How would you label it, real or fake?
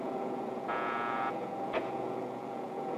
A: fake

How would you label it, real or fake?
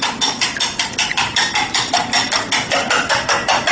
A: real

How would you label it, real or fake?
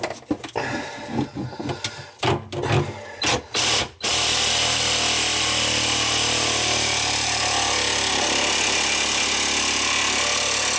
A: real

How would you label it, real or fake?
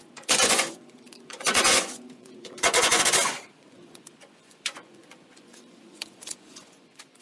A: fake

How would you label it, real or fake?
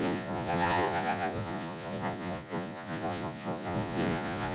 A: fake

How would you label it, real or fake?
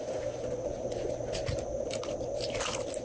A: real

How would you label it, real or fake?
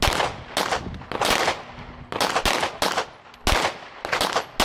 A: real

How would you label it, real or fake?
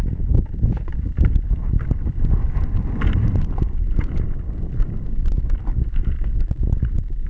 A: real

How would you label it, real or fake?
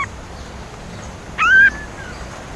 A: real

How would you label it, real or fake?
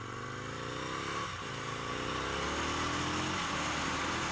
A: real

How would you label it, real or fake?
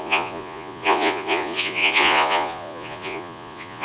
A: fake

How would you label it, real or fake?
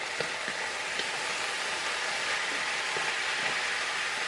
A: real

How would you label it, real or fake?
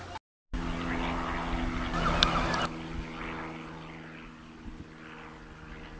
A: real